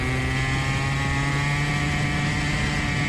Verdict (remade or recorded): recorded